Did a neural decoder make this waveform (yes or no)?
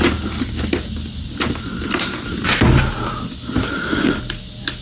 no